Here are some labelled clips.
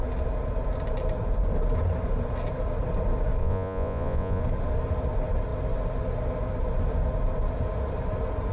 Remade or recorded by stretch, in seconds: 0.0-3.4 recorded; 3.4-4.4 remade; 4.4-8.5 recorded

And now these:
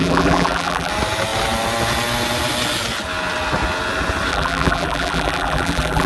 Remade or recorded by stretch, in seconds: 0.0-0.9 remade; 0.9-4.3 recorded; 4.3-6.1 remade

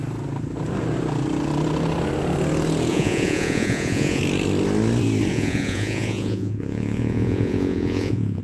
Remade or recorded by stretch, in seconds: 0.0-2.9 recorded; 2.9-4.2 remade; 4.2-5.3 recorded; 5.3-8.4 remade

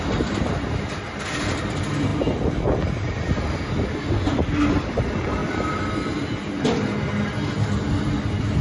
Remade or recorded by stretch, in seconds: 0.0-8.6 recorded

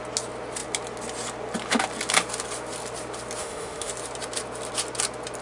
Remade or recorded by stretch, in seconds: 0.0-3.4 recorded; 3.4-3.9 remade; 3.9-5.4 recorded

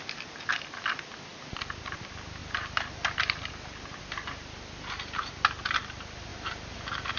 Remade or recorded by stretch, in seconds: 0.0-7.2 recorded